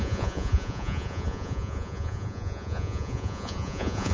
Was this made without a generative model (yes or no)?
no